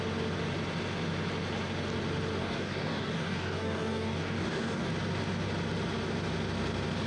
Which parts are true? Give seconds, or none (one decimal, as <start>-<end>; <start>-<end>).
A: 0.0-2.4; 4.9-7.1